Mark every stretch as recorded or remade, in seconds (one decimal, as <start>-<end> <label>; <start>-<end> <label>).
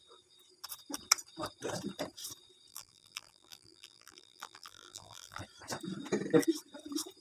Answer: 0.0-2.7 recorded; 2.7-5.4 remade; 5.4-7.2 recorded